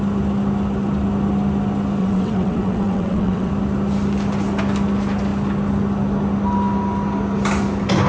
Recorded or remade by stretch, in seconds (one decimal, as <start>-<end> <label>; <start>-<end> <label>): 0.0-2.0 recorded; 2.0-3.5 remade; 3.5-8.1 recorded

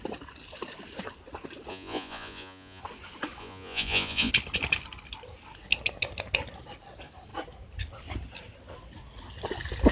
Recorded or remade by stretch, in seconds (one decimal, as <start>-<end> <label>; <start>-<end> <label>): 0.0-1.7 recorded; 1.7-2.8 remade; 2.8-3.4 recorded; 3.4-4.3 remade; 4.3-9.9 recorded